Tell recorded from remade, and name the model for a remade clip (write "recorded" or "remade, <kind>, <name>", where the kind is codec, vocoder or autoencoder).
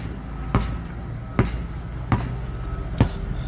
recorded